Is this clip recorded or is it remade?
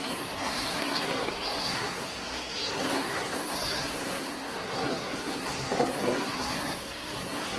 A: remade